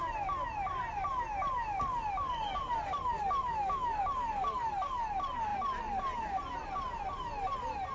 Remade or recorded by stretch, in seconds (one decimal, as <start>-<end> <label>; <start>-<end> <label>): 0.0-3.4 recorded; 3.4-4.0 remade; 4.0-7.9 recorded